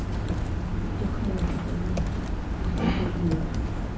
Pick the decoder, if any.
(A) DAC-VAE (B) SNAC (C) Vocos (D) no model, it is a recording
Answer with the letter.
D